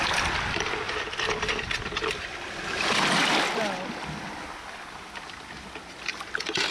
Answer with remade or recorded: recorded